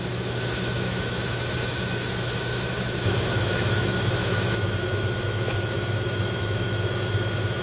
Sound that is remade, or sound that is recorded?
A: remade